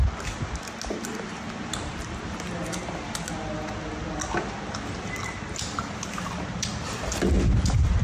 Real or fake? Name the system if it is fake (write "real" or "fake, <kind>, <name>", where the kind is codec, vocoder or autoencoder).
real